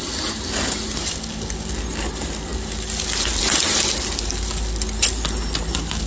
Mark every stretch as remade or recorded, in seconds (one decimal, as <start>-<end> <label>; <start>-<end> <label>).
0.0-6.1 recorded